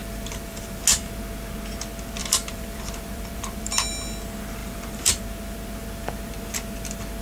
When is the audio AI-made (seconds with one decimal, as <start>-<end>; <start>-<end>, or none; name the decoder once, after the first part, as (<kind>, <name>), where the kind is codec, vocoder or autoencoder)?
0.0-0.8 (vocoder, BigVGAN v2); 2.2-3.9; 4.6-5.2